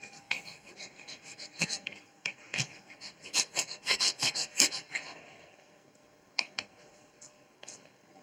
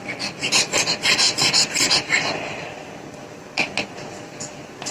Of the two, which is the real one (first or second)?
second